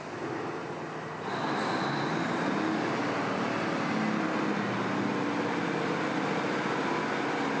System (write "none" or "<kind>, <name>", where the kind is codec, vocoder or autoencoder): none